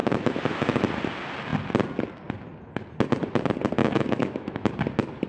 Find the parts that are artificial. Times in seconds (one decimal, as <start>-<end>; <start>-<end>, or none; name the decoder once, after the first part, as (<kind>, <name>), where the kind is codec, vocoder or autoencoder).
0.0-0.9 (autoencoder, DAC-VAE); 3.8-4.7